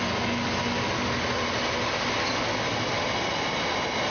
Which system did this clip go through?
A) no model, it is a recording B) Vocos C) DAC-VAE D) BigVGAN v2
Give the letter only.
A